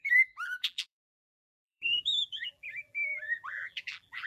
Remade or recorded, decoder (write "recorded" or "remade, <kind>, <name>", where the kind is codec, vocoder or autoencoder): remade, vocoder, BigVGAN v2